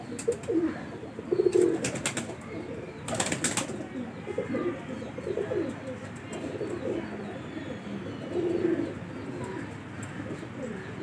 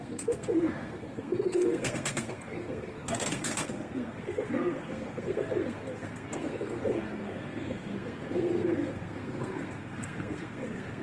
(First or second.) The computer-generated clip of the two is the second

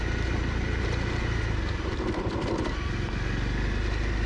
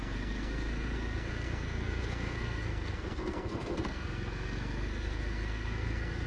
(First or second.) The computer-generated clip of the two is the second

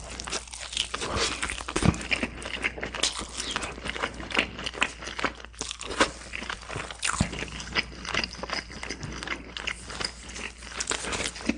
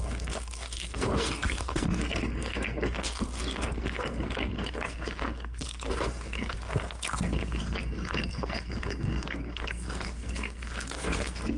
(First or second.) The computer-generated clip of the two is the second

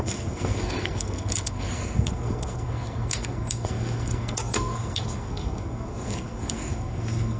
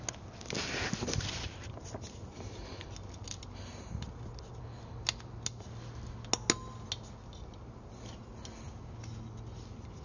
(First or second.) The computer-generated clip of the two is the first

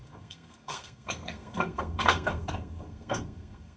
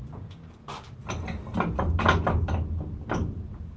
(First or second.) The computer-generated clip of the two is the first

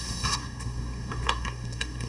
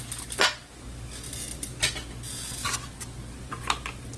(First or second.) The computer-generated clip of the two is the first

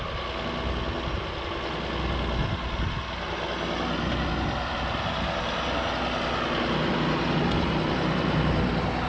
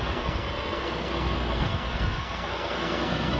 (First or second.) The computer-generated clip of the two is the second